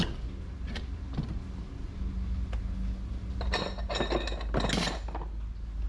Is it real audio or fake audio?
real